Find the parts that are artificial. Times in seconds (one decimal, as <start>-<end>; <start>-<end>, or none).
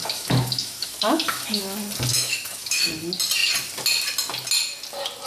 0.0-1.6; 2.1-2.9